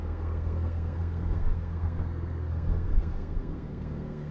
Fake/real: fake